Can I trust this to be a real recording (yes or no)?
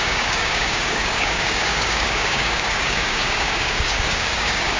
no